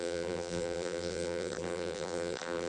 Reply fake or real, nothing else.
fake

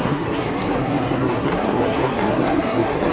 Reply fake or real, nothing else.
fake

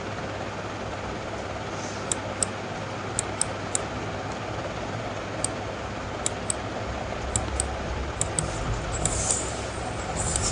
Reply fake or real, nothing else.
real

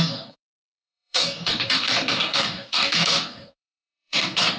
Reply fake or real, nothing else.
fake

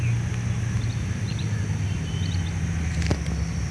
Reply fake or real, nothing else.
real